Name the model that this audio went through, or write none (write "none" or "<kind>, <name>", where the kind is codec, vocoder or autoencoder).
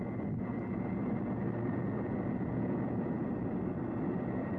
none